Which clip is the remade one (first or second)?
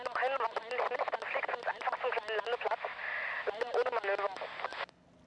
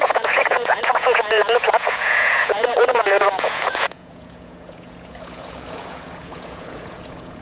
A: second